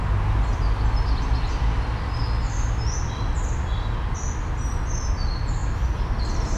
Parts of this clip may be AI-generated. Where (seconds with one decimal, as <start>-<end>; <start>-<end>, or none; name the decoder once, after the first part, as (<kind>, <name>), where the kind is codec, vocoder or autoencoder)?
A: none